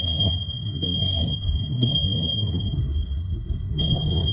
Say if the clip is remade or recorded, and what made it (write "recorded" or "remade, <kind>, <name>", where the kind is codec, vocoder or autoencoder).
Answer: remade, codec, SNAC